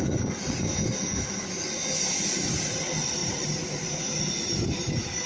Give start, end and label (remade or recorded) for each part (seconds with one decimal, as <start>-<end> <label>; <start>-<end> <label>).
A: 0.0-3.2 recorded; 3.2-4.0 remade; 4.0-5.3 recorded